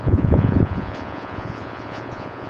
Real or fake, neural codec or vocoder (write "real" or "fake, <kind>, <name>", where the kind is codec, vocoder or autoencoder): fake, vocoder, Vocos